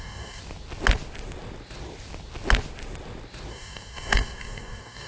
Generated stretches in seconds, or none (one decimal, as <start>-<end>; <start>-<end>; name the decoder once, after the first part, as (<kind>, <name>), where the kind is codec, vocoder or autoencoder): 0.0-0.4 (codec, DAC); 3.5-5.1